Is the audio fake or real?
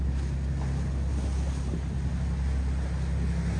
real